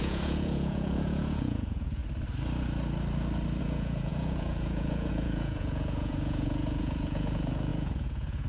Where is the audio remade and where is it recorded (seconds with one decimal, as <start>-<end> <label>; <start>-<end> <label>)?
0.0-2.0 remade; 2.0-3.6 recorded; 3.6-8.5 remade

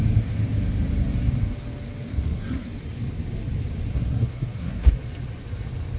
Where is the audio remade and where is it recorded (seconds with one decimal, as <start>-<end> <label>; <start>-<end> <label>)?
0.0-2.1 recorded; 2.1-2.7 remade; 2.7-3.9 recorded; 3.9-4.9 remade; 4.9-6.0 recorded

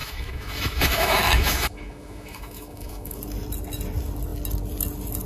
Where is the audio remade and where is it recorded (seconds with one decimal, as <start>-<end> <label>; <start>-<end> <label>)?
0.0-3.2 remade; 3.2-5.3 recorded